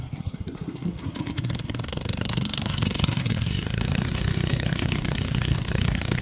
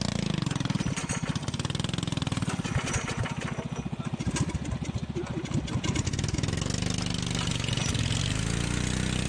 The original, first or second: second